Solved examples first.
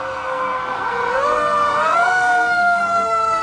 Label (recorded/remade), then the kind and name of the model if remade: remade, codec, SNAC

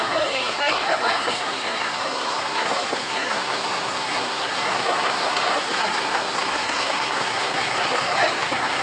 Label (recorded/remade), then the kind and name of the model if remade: remade, codec, SNAC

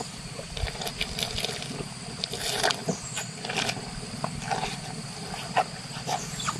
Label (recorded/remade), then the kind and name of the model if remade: recorded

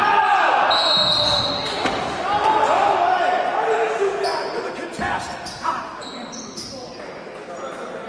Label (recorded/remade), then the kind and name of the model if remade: recorded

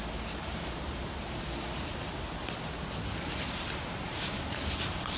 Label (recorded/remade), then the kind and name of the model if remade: recorded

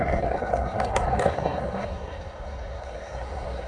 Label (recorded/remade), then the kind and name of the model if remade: remade, codec, SNAC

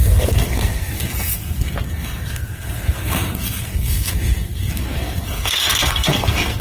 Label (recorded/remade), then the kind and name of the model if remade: remade, codec, SNAC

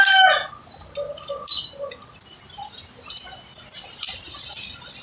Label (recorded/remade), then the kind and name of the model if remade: recorded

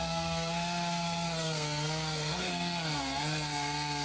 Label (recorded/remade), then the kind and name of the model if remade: remade, codec, SNAC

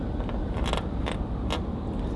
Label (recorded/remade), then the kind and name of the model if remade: recorded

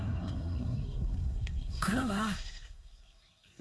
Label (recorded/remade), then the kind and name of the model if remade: remade, codec, SNAC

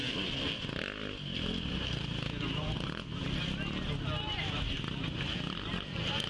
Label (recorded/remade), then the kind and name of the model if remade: recorded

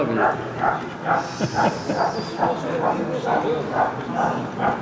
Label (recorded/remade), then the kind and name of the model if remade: recorded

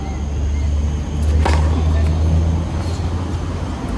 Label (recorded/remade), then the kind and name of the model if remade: recorded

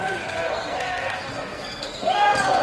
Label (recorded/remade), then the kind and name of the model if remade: remade, codec, SNAC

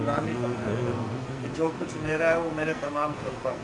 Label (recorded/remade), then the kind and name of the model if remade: remade, codec, SNAC